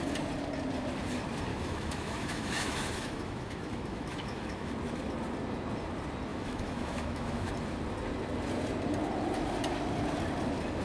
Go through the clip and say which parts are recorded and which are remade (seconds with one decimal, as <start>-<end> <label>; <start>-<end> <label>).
0.0-1.5 recorded; 1.5-4.7 remade; 4.7-6.3 recorded; 6.3-7.5 remade; 7.5-10.8 recorded